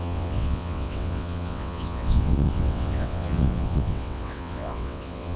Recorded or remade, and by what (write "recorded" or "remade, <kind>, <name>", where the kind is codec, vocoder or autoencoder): remade, vocoder, WaveNeXt